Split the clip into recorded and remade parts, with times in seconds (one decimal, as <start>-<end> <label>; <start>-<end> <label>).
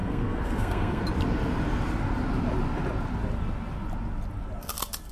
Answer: 0.0-1.0 remade; 1.0-5.1 recorded